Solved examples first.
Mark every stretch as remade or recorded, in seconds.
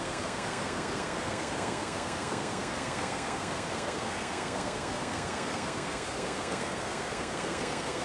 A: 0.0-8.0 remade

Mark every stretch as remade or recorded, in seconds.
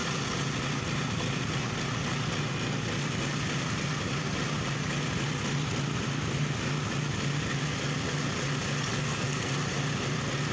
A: 0.0-8.9 recorded; 8.9-9.5 remade; 9.5-10.5 recorded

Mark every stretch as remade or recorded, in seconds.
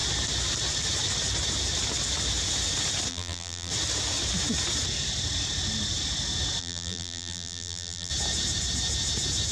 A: 0.0-3.1 recorded; 3.1-3.7 remade; 3.7-6.6 recorded; 6.6-8.1 remade; 8.1-9.5 recorded